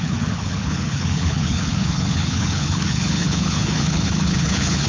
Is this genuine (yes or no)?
no